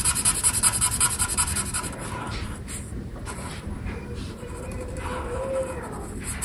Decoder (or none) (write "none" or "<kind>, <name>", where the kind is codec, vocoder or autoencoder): vocoder, BigVGAN v2